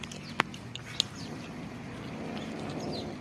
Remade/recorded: recorded